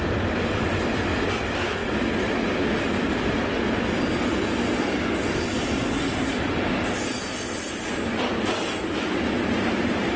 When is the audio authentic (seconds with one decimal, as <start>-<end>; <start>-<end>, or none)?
0.0-10.2